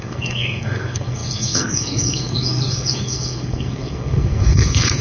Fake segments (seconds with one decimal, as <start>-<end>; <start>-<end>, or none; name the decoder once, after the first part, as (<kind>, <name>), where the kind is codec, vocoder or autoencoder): 0.0-5.0 (codec, SNAC)